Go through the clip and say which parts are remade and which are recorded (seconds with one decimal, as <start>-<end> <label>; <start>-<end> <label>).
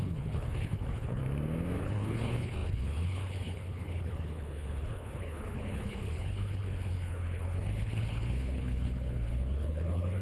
0.0-1.2 remade; 1.2-1.8 recorded; 1.8-10.2 remade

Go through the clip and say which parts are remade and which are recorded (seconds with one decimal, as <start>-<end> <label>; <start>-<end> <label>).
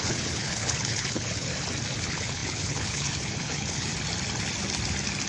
0.0-1.5 remade; 1.5-2.0 recorded; 2.0-3.9 remade; 3.9-5.3 recorded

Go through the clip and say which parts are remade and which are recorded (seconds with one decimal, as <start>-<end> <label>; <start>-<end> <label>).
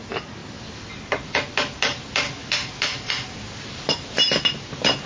0.0-5.1 recorded